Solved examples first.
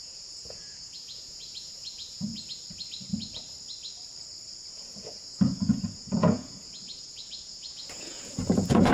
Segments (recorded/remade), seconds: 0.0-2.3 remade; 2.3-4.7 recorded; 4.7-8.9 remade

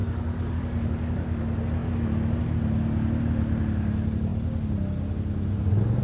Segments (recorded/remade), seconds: 0.0-1.4 remade; 1.4-6.0 recorded